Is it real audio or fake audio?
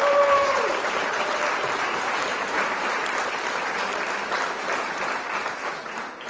fake